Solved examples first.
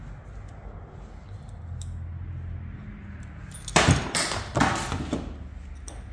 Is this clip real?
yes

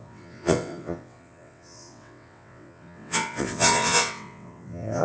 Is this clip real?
no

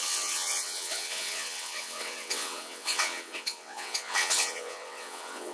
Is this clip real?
no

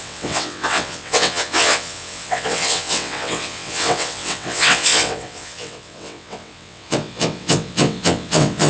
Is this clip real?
no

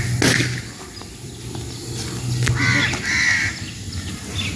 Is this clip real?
yes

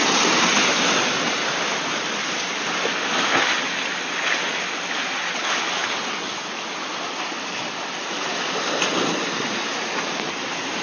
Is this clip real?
yes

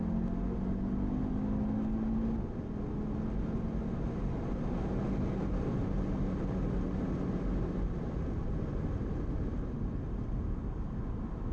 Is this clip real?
yes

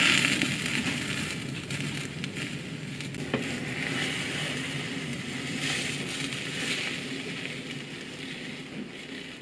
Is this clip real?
yes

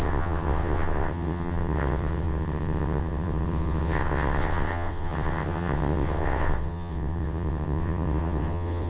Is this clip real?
no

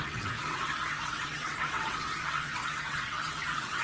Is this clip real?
no